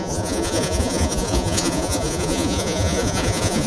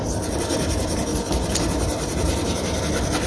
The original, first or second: second